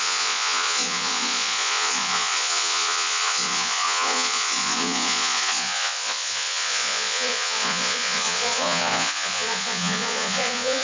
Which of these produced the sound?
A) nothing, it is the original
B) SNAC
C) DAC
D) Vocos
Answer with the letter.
D